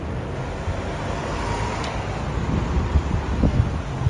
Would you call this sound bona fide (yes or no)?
yes